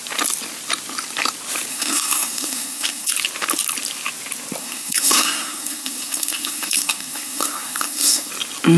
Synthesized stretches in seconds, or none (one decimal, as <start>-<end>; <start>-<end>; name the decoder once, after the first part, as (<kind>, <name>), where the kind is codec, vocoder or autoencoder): 1.7-3.1 (codec, SNAC); 4.6-8.3